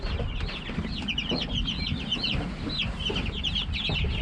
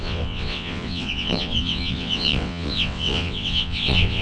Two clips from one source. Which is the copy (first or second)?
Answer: second